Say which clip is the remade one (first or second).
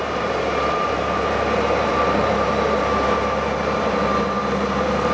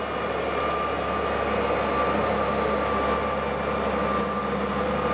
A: first